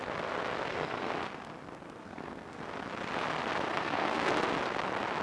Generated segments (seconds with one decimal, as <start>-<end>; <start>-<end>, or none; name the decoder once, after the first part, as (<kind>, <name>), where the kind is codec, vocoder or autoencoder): 0.7-1.2 (codec, SNAC); 2.0-2.6; 3.7-4.3